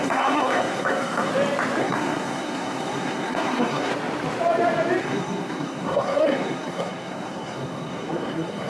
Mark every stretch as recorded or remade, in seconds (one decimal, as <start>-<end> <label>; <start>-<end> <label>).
0.0-1.3 remade; 1.3-1.8 recorded; 1.8-3.9 remade; 3.9-5.0 recorded; 5.0-8.7 remade